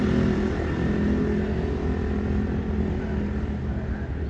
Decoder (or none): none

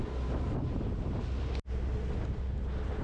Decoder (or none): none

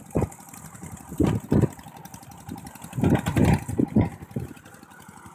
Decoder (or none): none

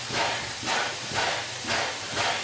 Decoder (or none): none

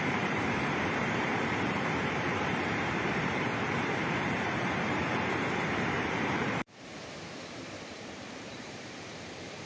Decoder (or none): vocoder, BigVGAN v2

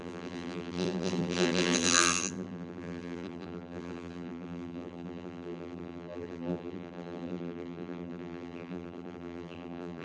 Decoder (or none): vocoder, BigVGAN v2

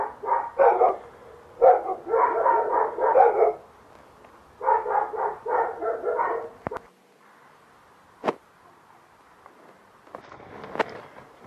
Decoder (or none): none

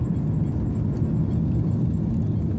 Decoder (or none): none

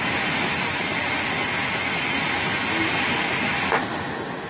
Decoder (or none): none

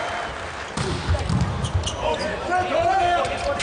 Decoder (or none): none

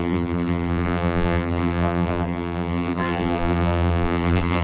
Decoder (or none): vocoder, BigVGAN v2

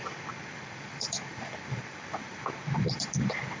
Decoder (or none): vocoder, BigVGAN v2